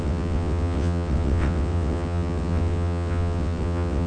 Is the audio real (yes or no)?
no